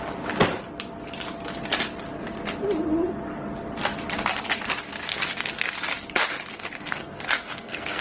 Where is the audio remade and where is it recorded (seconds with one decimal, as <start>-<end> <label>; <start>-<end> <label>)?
0.0-5.1 recorded; 5.1-5.7 remade; 5.7-6.5 recorded; 6.5-8.0 remade